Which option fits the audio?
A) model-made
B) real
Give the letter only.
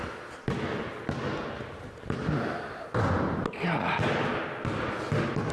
B